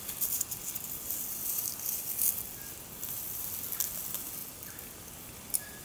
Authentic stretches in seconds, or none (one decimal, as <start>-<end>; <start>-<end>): 0.0-5.8